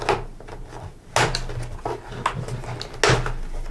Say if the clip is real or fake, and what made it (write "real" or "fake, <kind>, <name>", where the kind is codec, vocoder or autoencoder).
real